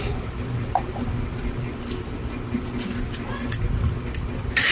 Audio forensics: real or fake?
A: real